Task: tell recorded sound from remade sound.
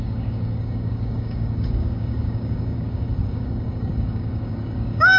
remade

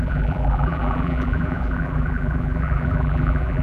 remade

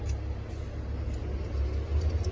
recorded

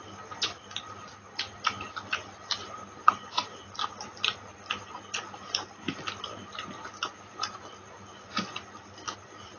recorded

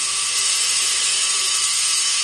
remade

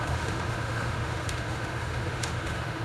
remade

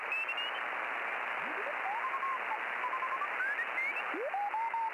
recorded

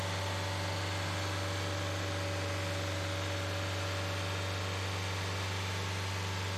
recorded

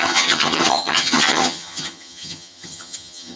remade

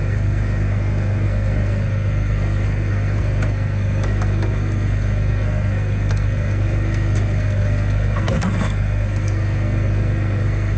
remade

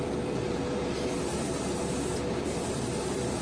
remade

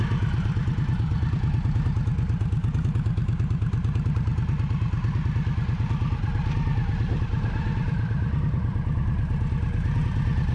recorded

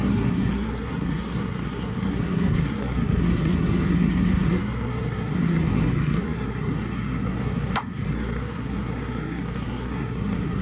remade